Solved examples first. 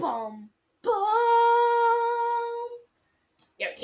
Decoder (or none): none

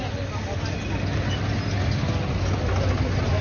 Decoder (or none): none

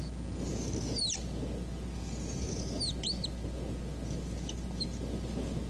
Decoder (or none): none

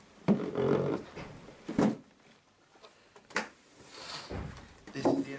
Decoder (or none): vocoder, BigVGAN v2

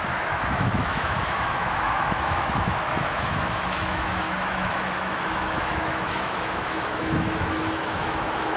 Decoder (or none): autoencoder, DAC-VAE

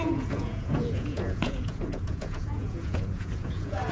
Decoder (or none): vocoder, Vocos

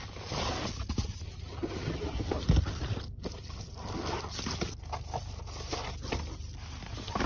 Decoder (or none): none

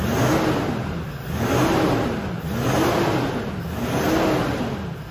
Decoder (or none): none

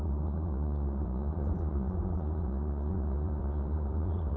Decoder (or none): vocoder, Vocos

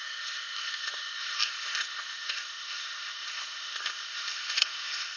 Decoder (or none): codec, ZipCodec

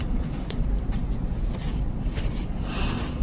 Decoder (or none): vocoder, Vocos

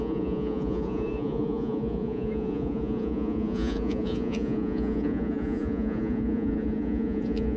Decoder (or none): vocoder, Vocos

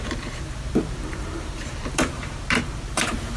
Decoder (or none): vocoder, BigVGAN v2